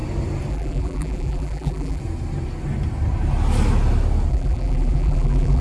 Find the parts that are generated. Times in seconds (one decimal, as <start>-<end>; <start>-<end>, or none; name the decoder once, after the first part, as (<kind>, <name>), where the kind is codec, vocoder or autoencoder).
0.5-2.0 (vocoder, BigVGAN v2); 4.3-5.6